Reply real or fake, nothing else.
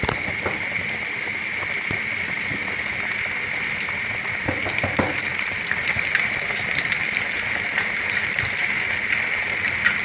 real